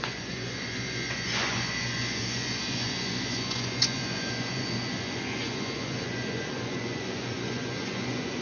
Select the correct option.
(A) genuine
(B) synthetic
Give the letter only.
B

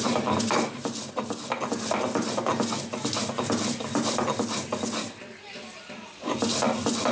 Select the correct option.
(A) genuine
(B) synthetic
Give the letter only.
A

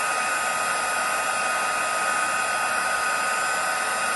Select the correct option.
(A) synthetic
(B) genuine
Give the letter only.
B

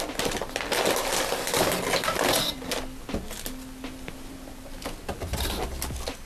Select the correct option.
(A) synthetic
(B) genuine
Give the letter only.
B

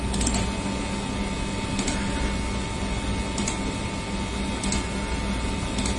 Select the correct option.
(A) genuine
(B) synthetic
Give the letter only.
A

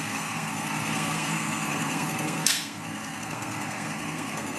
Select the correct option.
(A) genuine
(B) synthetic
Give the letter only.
B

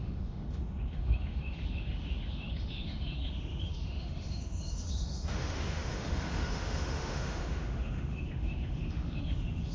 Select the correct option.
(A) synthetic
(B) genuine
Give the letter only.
A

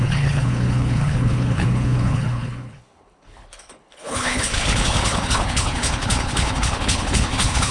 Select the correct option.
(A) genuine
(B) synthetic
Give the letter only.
B